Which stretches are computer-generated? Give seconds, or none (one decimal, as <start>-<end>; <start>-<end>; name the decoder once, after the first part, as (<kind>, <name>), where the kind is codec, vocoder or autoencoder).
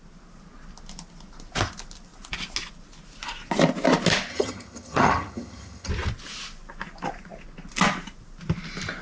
4.3-5.9 (vocoder, HiFi-GAN)